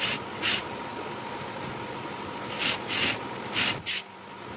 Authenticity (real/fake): real